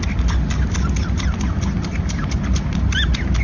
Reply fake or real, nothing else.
fake